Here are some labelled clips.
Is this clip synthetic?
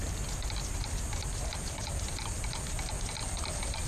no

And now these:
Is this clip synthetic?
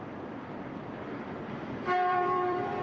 yes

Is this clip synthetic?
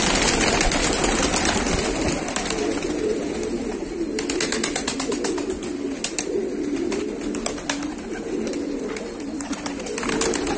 no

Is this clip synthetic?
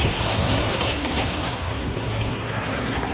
yes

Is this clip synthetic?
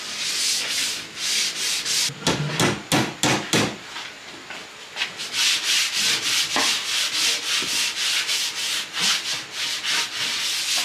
no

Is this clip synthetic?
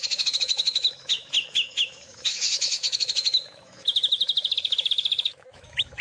yes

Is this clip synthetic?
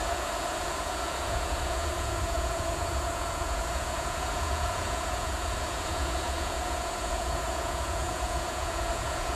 yes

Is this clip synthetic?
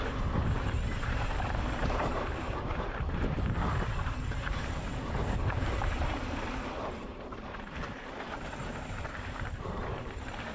yes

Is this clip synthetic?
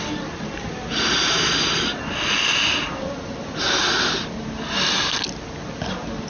no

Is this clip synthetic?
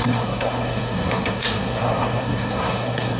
yes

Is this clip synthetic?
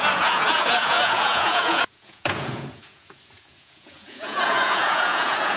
yes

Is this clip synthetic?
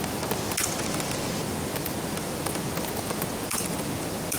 no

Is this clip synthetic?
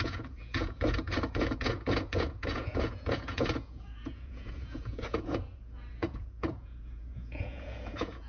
yes